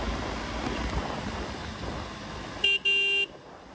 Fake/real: real